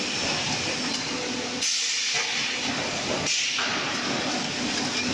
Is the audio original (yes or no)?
yes